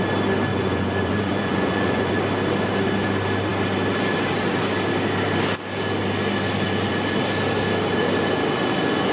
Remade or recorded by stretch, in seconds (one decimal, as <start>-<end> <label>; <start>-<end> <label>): 0.0-0.5 recorded; 0.5-2.1 remade; 2.1-9.1 recorded

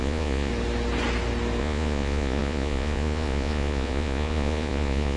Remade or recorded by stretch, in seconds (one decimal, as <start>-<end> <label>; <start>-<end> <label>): 0.0-0.5 remade; 0.5-1.6 recorded; 1.6-5.2 remade

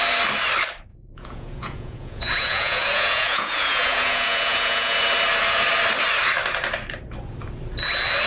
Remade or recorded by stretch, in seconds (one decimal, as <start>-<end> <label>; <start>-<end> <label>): 0.0-0.9 recorded; 0.9-5.0 remade; 5.0-8.3 recorded

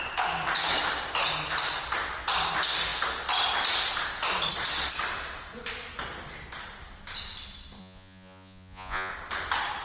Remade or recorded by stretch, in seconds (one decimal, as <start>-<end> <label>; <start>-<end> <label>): 0.0-7.8 recorded; 7.8-9.1 remade; 9.1-9.8 recorded

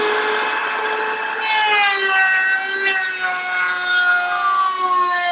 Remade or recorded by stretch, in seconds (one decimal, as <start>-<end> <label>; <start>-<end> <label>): 0.0-5.3 recorded

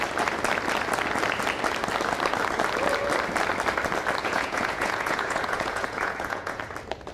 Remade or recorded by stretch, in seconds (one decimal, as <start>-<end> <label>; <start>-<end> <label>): 0.0-4.2 recorded; 4.2-6.6 remade; 6.6-7.1 recorded